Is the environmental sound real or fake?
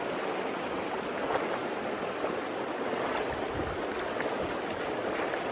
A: real